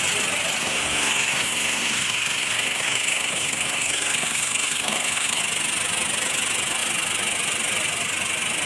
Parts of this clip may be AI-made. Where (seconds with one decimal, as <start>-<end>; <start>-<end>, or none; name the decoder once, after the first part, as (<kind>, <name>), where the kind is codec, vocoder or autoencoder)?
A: 0.6-5.4 (codec, SNAC)